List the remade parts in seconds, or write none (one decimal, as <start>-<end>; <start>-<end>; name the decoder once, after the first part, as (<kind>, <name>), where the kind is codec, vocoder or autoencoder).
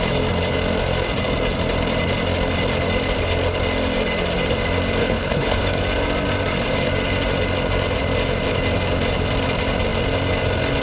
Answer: 5.0-5.8 (codec, HILCodec)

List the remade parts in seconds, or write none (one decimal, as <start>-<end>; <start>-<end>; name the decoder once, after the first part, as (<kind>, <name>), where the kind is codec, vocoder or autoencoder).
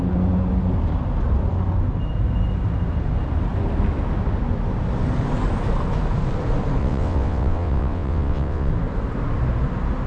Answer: 6.8-8.7 (vocoder, WaveNeXt)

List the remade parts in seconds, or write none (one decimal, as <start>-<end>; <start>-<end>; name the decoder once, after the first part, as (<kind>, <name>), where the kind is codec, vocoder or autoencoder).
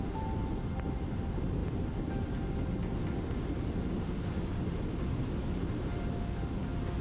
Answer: none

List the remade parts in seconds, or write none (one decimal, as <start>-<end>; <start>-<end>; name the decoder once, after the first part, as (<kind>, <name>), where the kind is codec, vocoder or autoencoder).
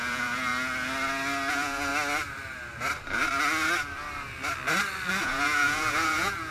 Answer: 0.0-0.5 (vocoder, Vocos); 1.5-1.9; 5.1-6.5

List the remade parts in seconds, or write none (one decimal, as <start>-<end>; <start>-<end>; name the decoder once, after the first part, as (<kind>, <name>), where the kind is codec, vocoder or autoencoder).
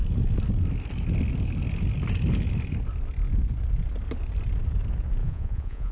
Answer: 5.2-5.9 (vocoder, Vocos)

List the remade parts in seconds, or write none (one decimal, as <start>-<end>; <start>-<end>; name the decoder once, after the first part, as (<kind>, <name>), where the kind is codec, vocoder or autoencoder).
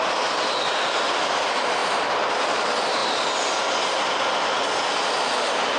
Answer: none